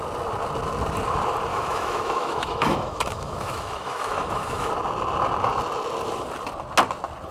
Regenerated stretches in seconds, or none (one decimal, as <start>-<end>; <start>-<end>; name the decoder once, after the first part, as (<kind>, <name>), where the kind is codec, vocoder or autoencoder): 1.5-4.7 (autoencoder, DAC-VAE)

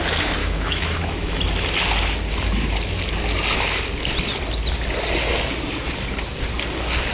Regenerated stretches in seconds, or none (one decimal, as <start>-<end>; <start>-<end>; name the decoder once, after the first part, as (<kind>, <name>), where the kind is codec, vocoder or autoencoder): 0.4-1.4 (autoencoder, DAC-VAE)